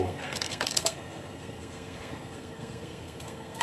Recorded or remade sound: remade